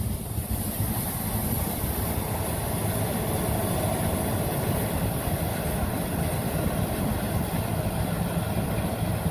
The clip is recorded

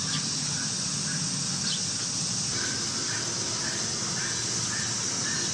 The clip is recorded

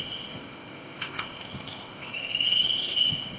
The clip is remade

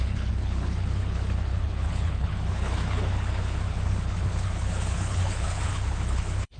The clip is remade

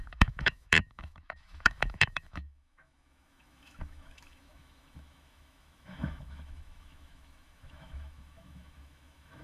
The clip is remade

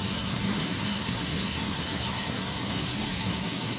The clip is remade